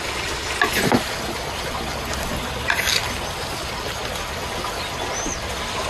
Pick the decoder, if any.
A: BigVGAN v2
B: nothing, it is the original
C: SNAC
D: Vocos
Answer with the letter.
B